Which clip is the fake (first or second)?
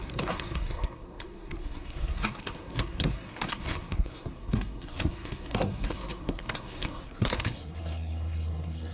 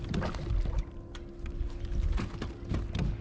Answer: first